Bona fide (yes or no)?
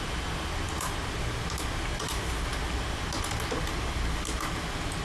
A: yes